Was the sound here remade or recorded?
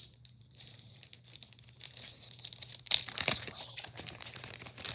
remade